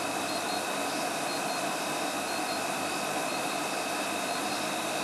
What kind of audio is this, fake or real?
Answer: real